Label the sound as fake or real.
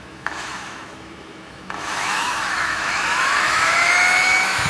fake